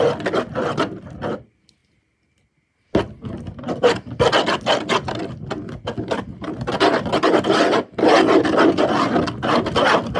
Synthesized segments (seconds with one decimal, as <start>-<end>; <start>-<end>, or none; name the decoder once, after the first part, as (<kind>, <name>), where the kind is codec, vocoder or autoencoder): none